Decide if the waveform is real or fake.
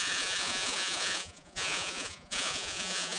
fake